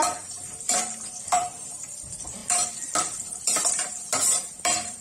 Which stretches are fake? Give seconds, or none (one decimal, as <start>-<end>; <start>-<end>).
0.0-5.0